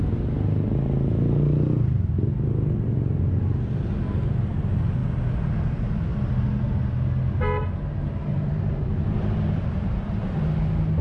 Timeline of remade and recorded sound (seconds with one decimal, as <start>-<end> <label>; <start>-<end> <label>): 0.0-6.1 recorded; 6.1-6.8 remade; 6.8-8.3 recorded; 8.3-10.4 remade; 10.4-11.0 recorded